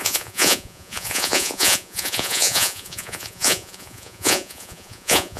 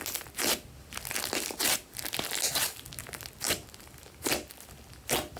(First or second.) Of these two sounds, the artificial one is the first